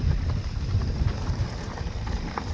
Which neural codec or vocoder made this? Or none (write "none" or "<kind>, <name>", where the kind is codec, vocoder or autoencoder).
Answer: vocoder, BigVGAN v2